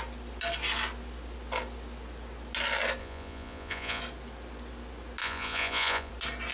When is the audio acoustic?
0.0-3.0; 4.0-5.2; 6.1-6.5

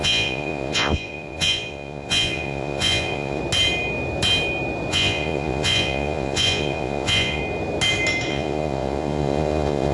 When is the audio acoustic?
3.4-4.9; 7.4-8.3

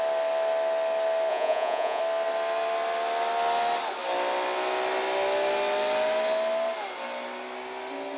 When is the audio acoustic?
0.0-1.3; 2.0-8.2

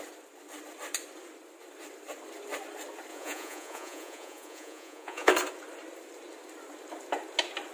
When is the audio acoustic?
0.0-3.1; 5.3-7.7

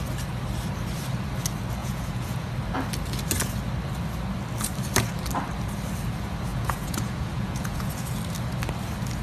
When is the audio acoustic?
0.0-1.8; 2.5-6.5; 7.9-9.2

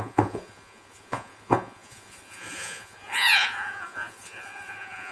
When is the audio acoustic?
none